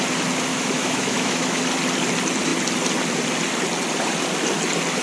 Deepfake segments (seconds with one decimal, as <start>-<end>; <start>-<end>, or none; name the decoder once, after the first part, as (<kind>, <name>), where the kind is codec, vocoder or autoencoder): 0.5-1.6 (autoencoder, DAC-VAE)